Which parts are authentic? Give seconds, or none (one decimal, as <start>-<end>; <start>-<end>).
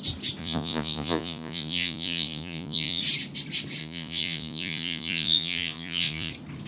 0.0-0.4; 3.0-3.8; 6.3-6.7